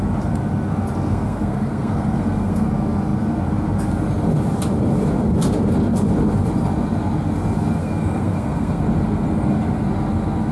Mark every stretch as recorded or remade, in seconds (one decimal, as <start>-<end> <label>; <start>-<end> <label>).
0.0-1.1 recorded; 1.1-2.7 remade; 2.7-7.8 recorded; 7.8-8.8 remade; 8.8-10.5 recorded